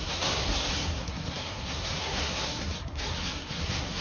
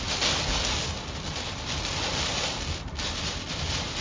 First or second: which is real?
second